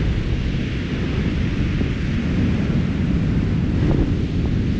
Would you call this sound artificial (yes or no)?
no